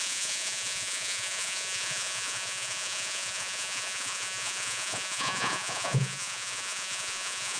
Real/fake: fake